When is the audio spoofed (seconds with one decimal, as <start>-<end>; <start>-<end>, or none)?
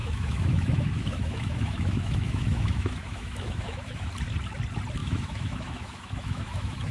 0.0-4.1; 5.0-6.9